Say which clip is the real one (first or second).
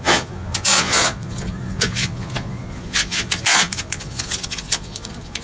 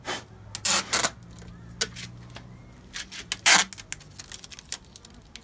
second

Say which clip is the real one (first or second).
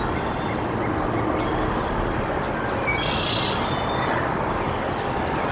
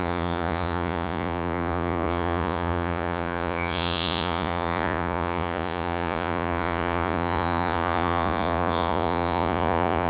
first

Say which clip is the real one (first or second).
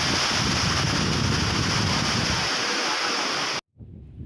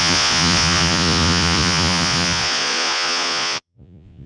first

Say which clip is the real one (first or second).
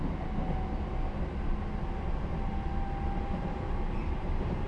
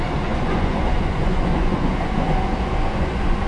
first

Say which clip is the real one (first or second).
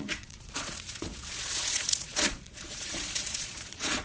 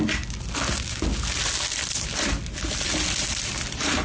second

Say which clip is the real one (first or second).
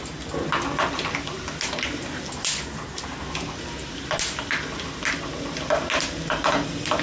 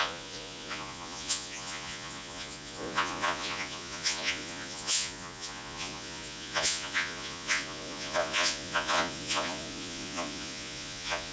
first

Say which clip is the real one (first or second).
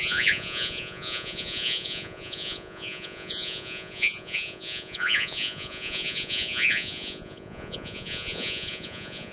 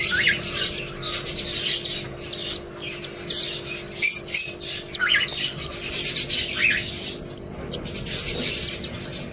second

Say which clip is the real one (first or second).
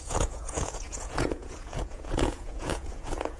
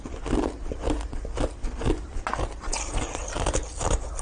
second